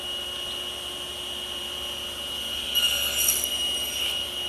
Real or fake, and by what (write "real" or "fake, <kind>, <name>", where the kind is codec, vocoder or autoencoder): real